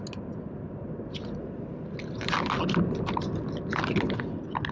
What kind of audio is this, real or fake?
real